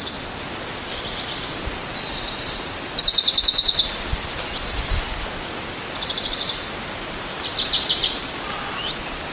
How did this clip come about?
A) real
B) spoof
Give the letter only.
A